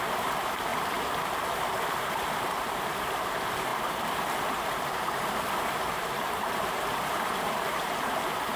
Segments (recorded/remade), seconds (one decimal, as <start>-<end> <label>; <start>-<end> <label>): 0.0-0.7 remade; 0.7-1.8 recorded; 1.8-8.6 remade